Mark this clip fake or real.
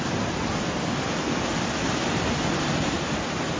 real